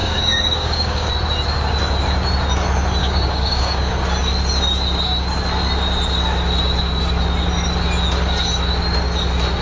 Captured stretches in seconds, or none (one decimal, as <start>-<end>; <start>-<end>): 1.1-3.0; 3.9-9.6

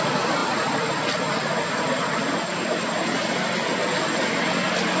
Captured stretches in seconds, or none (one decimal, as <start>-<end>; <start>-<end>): 0.0-5.0